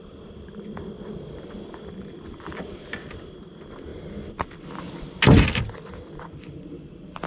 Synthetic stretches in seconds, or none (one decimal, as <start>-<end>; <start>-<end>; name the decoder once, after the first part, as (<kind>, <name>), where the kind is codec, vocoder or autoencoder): none